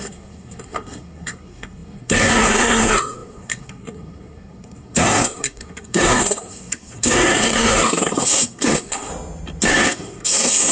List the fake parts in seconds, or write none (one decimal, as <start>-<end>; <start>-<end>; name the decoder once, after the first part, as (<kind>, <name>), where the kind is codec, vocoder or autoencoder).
0.0-9.1 (codec, SNAC); 9.7-10.7